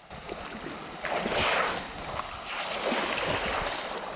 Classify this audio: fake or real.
real